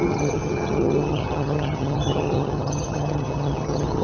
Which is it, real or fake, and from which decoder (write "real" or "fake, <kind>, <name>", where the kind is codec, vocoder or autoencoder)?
fake, vocoder, HiFi-GAN